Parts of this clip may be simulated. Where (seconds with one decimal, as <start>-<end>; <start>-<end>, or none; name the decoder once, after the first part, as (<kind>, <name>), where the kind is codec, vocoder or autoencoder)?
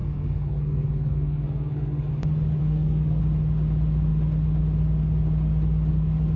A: 0.0-2.1 (codec, SNAC); 2.6-3.2